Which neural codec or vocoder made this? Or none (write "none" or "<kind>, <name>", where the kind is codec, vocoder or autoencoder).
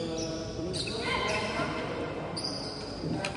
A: none